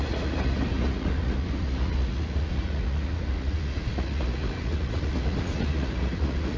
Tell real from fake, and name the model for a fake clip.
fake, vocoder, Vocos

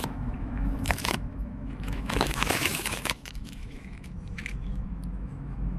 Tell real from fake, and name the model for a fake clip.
fake, autoencoder, DAC-VAE